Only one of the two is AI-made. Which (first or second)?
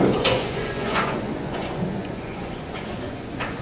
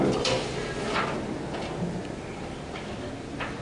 first